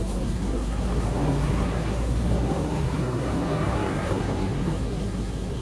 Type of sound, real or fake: fake